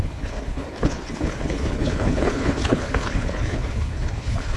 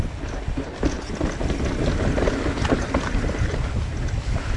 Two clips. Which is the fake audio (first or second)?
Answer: first